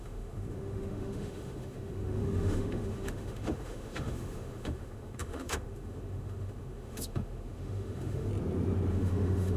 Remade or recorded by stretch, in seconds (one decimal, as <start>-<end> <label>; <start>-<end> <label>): 0.0-8.3 remade; 8.3-8.9 recorded; 8.9-9.6 remade